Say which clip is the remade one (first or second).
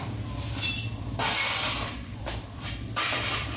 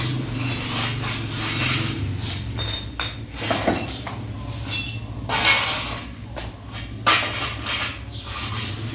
first